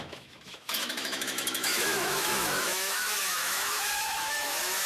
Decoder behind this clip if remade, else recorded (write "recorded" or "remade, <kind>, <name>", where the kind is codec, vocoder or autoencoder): remade, autoencoder, DAC-VAE